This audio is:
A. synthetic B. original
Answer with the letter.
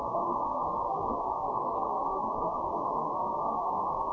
A